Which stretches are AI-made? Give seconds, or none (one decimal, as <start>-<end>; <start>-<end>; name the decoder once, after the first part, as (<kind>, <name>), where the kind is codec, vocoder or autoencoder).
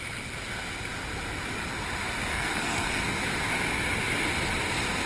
2.3-3.0 (codec, SNAC)